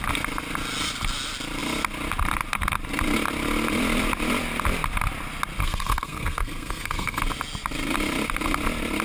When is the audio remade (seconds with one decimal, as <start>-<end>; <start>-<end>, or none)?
5.6-7.2